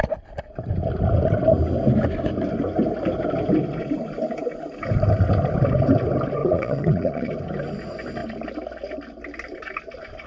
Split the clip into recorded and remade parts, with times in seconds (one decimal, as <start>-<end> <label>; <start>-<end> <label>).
0.0-6.4 recorded; 6.4-7.3 remade; 7.3-10.3 recorded